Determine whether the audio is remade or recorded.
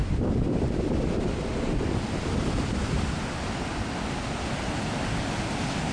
recorded